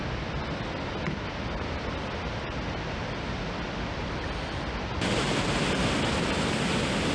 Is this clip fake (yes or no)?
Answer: no